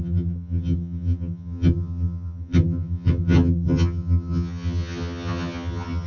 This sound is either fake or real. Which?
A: fake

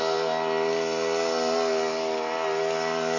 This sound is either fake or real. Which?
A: real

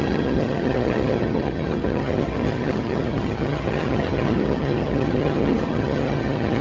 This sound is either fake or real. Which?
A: fake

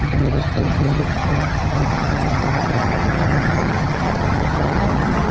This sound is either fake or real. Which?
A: fake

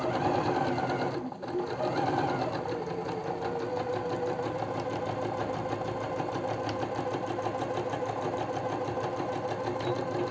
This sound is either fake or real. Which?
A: real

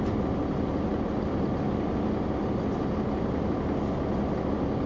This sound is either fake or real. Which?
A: real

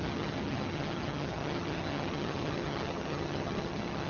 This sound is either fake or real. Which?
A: fake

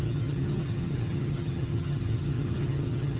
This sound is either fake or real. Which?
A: fake